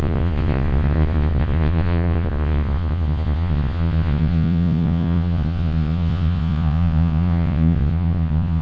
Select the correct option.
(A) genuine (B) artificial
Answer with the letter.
B